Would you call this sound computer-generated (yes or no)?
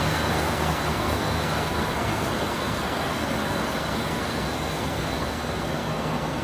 yes